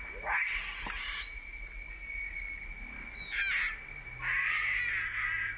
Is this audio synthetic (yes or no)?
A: no